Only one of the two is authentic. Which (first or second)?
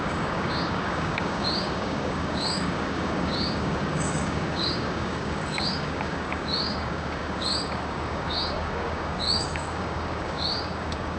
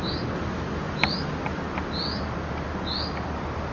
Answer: second